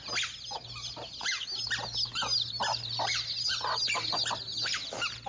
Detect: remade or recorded recorded